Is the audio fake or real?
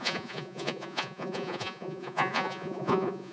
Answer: fake